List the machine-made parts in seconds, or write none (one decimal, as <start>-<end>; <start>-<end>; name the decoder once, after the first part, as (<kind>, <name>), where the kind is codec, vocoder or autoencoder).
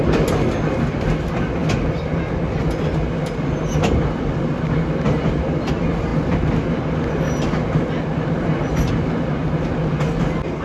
none